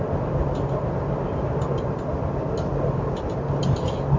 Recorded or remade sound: recorded